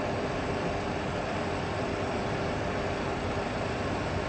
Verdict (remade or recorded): recorded